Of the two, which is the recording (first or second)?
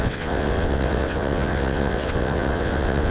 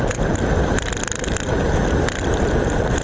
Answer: second